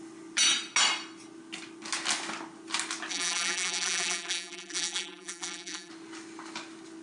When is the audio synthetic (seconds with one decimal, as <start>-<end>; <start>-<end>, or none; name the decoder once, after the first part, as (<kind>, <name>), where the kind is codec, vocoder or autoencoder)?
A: 3.1-5.9 (vocoder, BigVGAN v2)